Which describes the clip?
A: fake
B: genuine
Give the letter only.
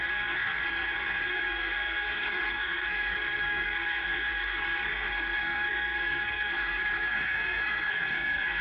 A